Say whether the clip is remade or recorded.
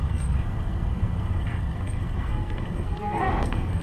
remade